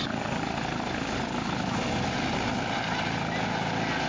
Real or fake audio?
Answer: real